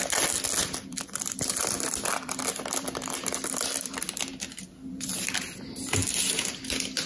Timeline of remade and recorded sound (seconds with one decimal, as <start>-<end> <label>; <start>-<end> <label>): 0.0-0.9 recorded; 0.9-4.3 remade; 4.3-7.1 recorded

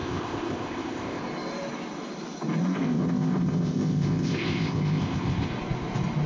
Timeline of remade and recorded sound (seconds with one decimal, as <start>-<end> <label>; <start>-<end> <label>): 0.0-1.2 remade; 1.2-2.6 recorded; 2.6-5.5 remade; 5.5-6.3 recorded

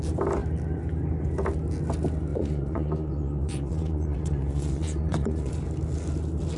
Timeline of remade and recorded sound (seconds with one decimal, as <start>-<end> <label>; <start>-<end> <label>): 0.0-2.3 recorded; 2.3-5.5 remade; 5.5-6.6 recorded

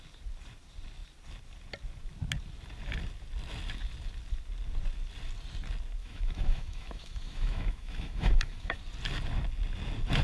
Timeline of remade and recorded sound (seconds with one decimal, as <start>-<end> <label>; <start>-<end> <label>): 0.0-6.0 recorded; 6.0-8.8 remade; 8.8-10.2 recorded

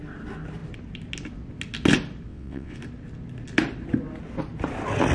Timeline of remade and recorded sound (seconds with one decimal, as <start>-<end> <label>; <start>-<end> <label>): 0.0-2.3 recorded; 2.3-2.8 remade; 2.8-5.1 recorded

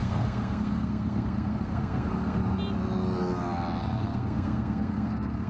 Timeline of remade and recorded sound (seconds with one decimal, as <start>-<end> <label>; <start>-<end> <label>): 0.0-2.4 remade; 2.4-3.8 recorded; 3.8-5.5 remade

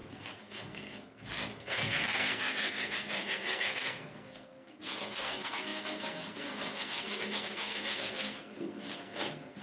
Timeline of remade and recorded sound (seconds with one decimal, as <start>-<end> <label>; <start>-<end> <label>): 0.0-9.6 remade